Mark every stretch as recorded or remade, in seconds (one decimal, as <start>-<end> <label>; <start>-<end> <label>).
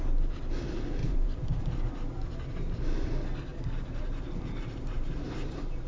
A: 0.0-1.0 recorded; 1.0-1.6 remade; 1.6-3.5 recorded; 3.5-5.9 remade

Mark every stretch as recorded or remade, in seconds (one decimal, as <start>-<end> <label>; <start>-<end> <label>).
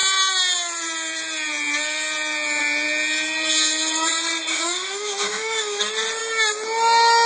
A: 0.0-4.5 recorded; 4.5-5.8 remade; 5.8-7.3 recorded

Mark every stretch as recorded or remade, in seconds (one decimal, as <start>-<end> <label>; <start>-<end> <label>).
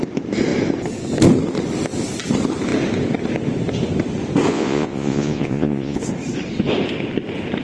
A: 0.0-4.5 recorded; 4.5-6.0 remade; 6.0-7.6 recorded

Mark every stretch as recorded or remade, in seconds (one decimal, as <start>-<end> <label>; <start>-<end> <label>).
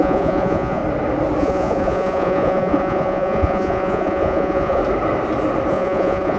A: 0.0-0.8 remade; 0.8-1.4 recorded; 1.4-4.8 remade; 4.8-5.7 recorded; 5.7-6.4 remade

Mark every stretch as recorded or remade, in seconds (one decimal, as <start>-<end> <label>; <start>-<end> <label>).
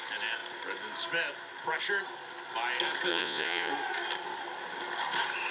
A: 0.0-3.1 recorded; 3.1-3.7 remade; 3.7-5.5 recorded